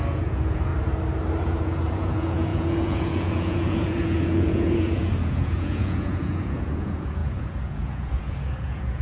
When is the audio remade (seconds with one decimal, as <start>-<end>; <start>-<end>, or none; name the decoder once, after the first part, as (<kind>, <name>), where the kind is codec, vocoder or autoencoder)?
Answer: 0.0-0.7 (vocoder, Vocos); 1.4-9.0